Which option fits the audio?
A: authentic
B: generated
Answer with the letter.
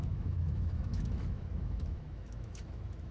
B